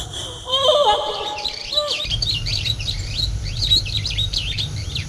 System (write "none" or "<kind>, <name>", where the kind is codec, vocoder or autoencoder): vocoder, BigVGAN v2